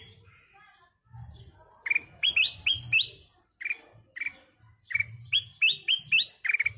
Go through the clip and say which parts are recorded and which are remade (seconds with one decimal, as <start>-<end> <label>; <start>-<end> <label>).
0.0-6.8 recorded